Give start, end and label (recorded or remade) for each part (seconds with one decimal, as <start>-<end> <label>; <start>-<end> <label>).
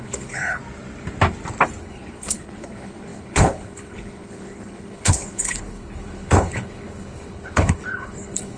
0.0-0.6 remade; 0.6-1.8 recorded; 1.8-8.6 remade